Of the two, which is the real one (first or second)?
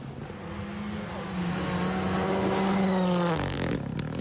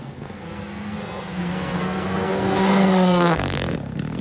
first